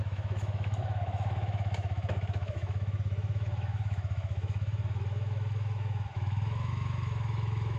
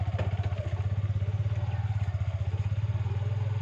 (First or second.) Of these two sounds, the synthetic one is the first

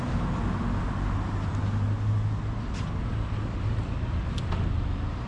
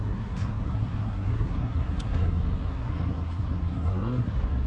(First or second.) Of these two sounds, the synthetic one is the second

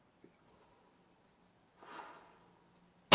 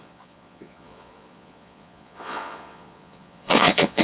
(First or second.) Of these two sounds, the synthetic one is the second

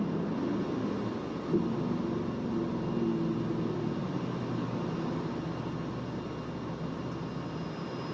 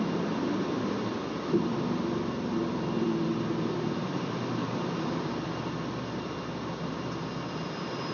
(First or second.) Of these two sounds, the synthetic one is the second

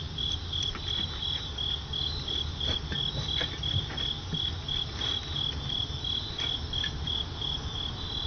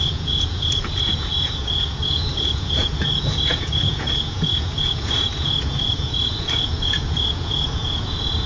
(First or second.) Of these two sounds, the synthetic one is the second